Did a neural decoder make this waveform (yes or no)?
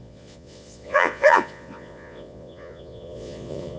yes